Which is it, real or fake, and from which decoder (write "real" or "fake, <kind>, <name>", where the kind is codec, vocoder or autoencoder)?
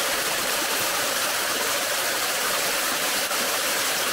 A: fake, vocoder, BigVGAN v2